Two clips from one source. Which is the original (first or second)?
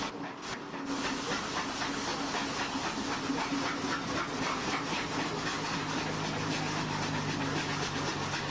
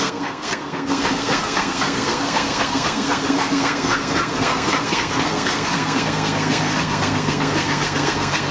first